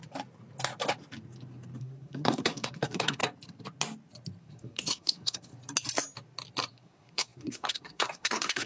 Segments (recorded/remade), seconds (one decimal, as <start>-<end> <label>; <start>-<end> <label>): 0.0-1.8 recorded; 1.8-3.2 remade; 3.2-4.4 recorded; 4.4-5.5 remade; 5.5-6.7 recorded; 6.7-8.7 remade